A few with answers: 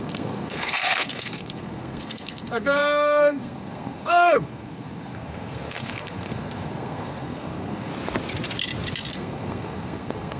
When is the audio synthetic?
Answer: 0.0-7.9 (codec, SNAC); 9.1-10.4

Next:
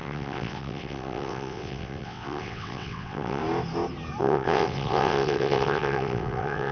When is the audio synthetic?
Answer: 0.0-3.4 (vocoder, WaveNeXt); 4.2-6.7

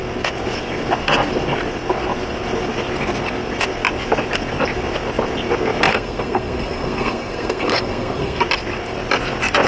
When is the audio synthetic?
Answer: 5.9-8.4 (codec, SNAC)